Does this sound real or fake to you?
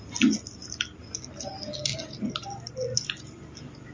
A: real